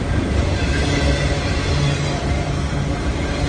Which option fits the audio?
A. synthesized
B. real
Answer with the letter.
B